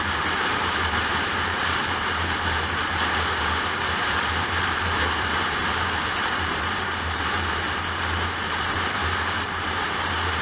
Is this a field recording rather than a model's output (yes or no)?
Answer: no